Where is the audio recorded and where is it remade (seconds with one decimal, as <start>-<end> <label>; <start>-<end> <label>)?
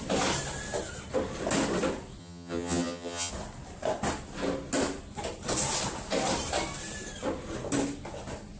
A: 0.0-2.2 recorded; 2.2-3.3 remade; 3.3-8.6 recorded